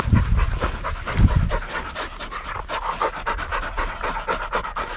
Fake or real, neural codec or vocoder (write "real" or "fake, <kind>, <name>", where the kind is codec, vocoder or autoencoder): real